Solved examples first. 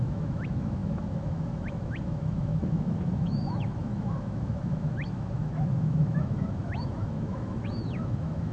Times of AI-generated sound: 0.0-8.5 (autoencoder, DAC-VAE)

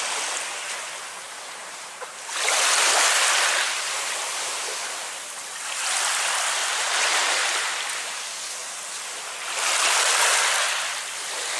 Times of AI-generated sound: 1.6-2.4 (vocoder, BigVGAN v2); 6.6-7.4